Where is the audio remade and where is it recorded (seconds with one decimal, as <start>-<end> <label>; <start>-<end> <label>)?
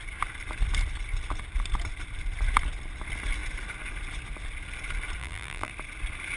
0.0-5.2 recorded; 5.2-5.7 remade; 5.7-6.4 recorded